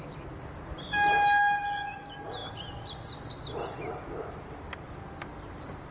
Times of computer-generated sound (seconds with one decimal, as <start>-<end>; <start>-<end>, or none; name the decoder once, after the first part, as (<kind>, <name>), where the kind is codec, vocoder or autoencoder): none